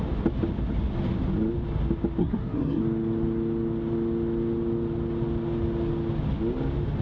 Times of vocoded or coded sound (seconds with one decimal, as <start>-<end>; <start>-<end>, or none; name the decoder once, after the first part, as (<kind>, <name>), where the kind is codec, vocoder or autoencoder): 2.2-2.8 (codec, SNAC)